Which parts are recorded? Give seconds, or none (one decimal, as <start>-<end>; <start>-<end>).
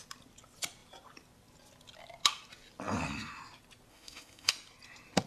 0.0-3.9; 4.5-5.3